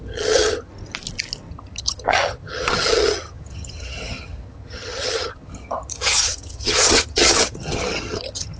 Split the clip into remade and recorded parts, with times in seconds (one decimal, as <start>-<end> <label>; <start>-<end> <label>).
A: 0.0-0.7 remade; 0.7-1.5 recorded; 1.5-8.6 remade